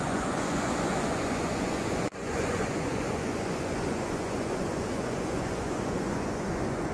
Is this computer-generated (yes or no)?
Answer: yes